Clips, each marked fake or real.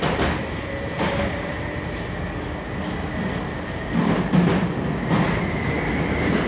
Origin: real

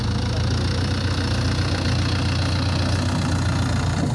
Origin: real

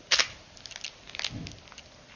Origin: real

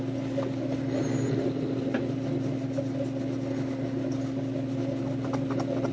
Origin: real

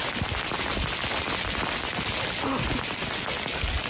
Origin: real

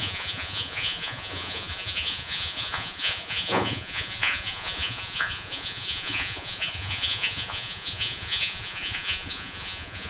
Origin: fake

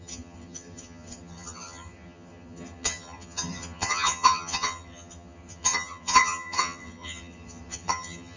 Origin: fake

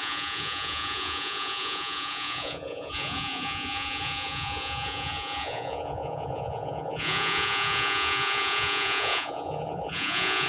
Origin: fake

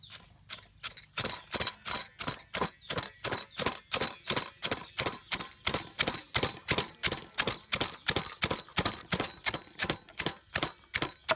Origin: real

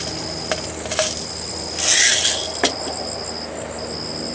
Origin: real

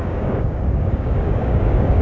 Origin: fake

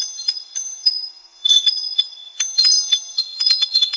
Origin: fake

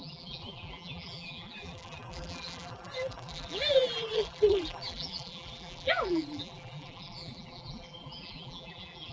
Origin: fake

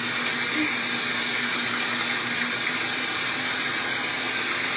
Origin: real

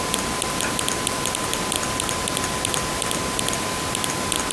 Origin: real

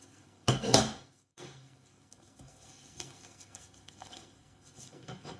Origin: fake